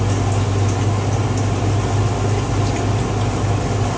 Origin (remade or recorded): recorded